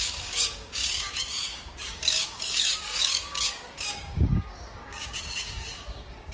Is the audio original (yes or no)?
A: no